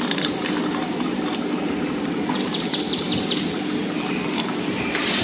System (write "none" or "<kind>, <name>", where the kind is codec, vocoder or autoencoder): none